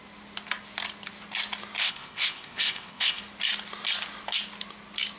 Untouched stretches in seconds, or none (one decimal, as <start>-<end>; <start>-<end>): 0.0-1.8; 3.2-5.2